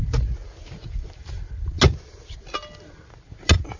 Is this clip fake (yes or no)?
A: no